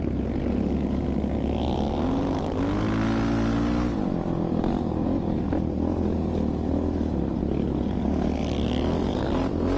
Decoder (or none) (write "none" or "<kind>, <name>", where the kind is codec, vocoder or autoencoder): none